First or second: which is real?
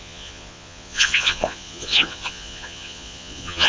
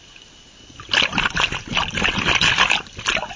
second